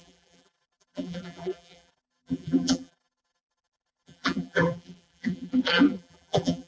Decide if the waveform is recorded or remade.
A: remade